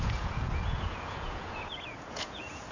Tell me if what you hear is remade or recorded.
remade